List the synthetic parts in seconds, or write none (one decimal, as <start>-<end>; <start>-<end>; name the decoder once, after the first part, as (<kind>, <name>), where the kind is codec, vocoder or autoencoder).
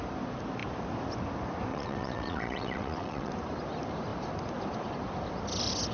1.7-3.3 (vocoder, WaveNeXt)